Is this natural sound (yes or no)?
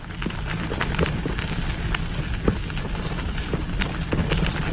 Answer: yes